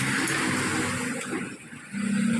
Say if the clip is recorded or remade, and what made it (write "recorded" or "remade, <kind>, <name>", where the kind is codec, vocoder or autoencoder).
recorded